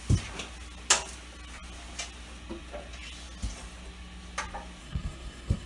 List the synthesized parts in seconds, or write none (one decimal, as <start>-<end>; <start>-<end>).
4.8-5.7